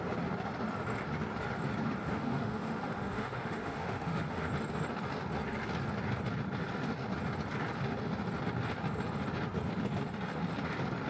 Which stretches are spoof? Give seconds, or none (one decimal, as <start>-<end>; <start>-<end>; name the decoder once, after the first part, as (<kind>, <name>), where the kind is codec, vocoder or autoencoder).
2.0-4.5 (autoencoder, DAC-VAE)